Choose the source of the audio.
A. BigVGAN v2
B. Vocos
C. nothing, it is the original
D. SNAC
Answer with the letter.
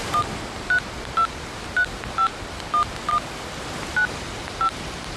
C